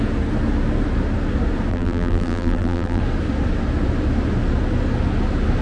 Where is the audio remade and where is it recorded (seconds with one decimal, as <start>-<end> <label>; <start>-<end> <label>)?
0.0-1.7 recorded; 1.7-3.0 remade; 3.0-5.6 recorded